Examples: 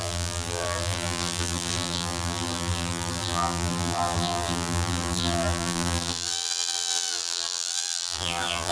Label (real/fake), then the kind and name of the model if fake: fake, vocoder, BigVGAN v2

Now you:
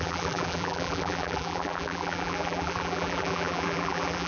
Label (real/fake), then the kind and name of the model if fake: fake, vocoder, BigVGAN v2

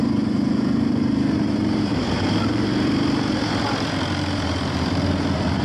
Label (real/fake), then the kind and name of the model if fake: fake, vocoder, BigVGAN v2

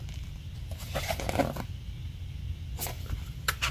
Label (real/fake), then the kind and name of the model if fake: real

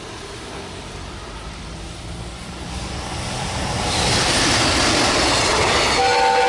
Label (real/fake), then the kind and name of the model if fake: real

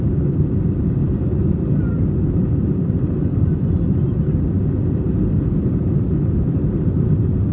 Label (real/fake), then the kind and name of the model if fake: real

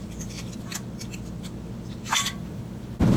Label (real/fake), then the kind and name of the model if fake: fake, vocoder, BigVGAN v2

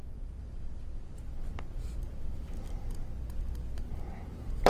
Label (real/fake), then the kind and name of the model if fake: real